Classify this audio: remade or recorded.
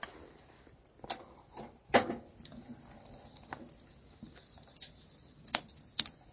recorded